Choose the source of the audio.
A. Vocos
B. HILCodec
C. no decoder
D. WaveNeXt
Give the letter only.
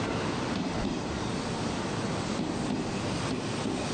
C